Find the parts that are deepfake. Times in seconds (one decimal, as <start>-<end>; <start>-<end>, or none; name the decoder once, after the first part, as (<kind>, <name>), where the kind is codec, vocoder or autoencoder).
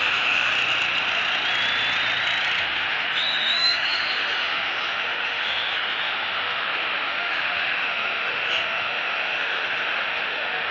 0.0-0.5 (autoencoder, DAC-VAE); 2.6-10.7